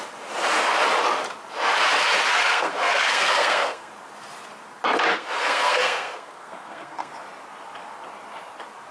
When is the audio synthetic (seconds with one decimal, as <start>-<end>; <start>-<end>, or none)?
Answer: 2.4-3.9; 5.1-7.1